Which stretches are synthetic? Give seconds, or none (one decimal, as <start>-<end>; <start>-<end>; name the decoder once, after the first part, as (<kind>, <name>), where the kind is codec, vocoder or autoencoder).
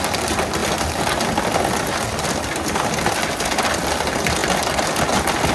none